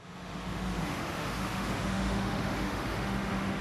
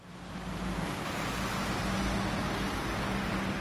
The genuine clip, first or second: second